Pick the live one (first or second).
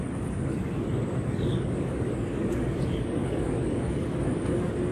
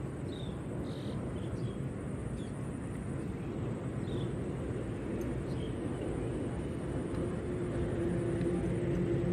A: second